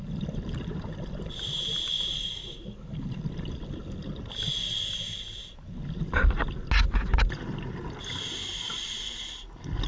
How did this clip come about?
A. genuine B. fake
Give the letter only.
A